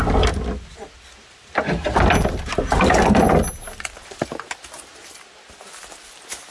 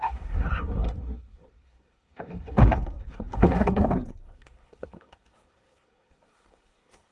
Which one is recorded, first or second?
first